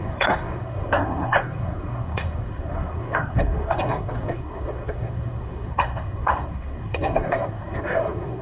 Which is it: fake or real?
fake